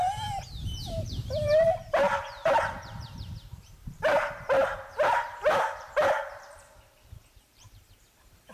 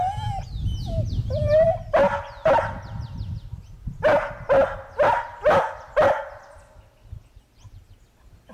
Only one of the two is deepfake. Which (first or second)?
first